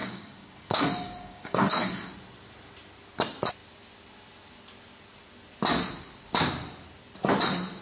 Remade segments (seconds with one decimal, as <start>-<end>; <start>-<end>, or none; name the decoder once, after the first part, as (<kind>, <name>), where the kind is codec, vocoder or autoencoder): 0.0-2.1 (codec, DAC)